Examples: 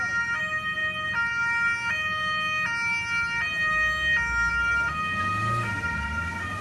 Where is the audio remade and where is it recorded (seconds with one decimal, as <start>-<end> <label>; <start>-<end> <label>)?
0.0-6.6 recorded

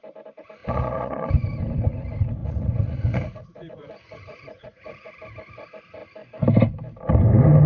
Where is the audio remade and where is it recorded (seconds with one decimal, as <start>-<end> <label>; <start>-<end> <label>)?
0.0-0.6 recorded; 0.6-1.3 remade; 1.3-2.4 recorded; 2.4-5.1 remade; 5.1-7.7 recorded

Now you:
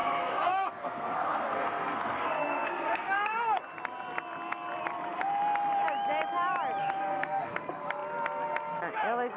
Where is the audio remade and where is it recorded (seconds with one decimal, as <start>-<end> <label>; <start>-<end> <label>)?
0.0-3.6 remade; 3.6-6.8 recorded; 6.8-7.5 remade; 7.5-9.4 recorded

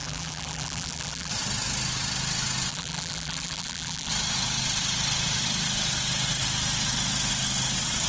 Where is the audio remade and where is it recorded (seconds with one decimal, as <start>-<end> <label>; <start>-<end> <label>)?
0.0-1.3 remade; 1.3-2.7 recorded; 2.7-4.1 remade; 4.1-8.1 recorded

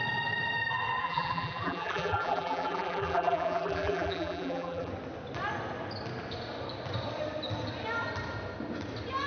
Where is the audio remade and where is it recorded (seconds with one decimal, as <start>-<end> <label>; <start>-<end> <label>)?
0.0-1.0 recorded; 1.0-4.9 remade; 4.9-9.3 recorded

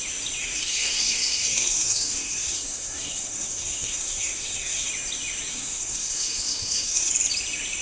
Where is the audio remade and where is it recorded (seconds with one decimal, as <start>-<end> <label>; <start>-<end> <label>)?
0.0-0.4 recorded; 0.4-4.9 remade; 4.9-5.5 recorded; 5.5-7.1 remade; 7.1-7.8 recorded